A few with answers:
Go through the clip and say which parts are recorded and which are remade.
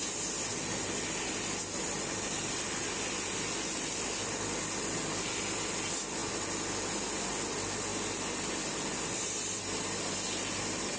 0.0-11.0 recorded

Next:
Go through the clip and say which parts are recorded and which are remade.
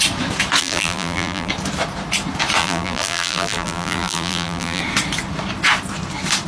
0.0-0.6 recorded; 0.6-1.5 remade; 1.5-2.6 recorded; 2.6-4.8 remade; 4.8-6.5 recorded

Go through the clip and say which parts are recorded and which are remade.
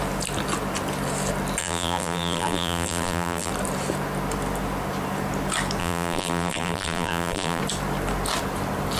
0.0-1.6 recorded; 1.6-3.5 remade; 3.5-5.8 recorded; 5.8-7.6 remade; 7.6-9.0 recorded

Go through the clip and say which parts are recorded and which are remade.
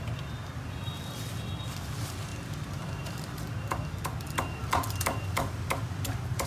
0.0-6.5 recorded